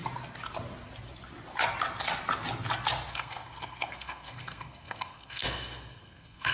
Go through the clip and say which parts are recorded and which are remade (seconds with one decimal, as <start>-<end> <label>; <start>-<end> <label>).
0.0-3.1 recorded; 3.1-6.5 remade